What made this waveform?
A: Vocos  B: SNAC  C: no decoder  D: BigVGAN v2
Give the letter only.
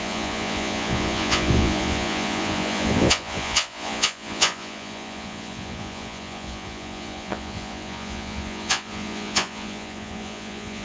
A